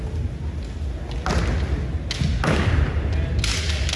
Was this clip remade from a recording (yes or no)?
no